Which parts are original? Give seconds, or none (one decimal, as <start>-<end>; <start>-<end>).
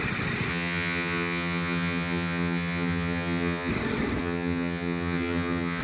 0.0-0.5; 3.7-4.2